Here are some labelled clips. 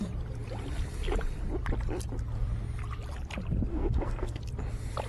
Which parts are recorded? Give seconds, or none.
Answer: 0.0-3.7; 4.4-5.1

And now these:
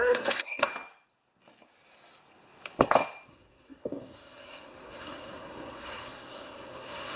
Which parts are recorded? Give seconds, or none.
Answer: 0.7-3.3

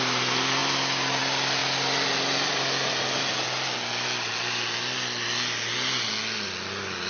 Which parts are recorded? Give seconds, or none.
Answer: 0.0-7.1

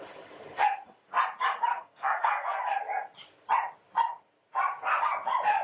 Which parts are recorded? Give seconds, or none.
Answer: 0.0-1.7; 2.6-5.6

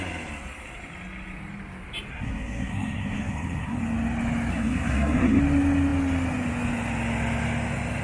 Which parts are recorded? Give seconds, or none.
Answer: 0.0-2.1; 3.8-4.5; 5.4-8.0

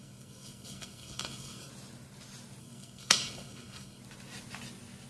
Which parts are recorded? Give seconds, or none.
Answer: 1.7-2.6; 4.0-5.1